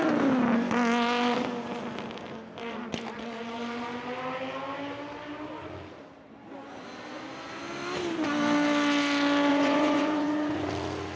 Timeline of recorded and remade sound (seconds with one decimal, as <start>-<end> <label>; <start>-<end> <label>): 0.0-9.5 recorded; 9.5-10.7 remade; 10.7-11.2 recorded